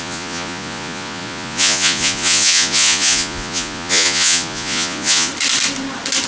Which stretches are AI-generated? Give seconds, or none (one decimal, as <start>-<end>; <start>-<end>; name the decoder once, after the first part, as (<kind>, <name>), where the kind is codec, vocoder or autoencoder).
0.0-5.3 (vocoder, Vocos)